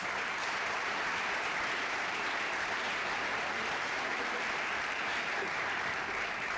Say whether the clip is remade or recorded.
remade